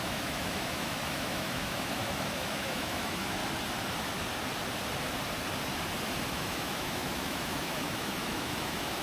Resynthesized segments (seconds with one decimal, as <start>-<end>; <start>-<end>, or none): 0.0-3.4; 6.3-9.0